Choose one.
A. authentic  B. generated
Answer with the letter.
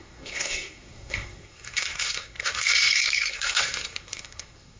B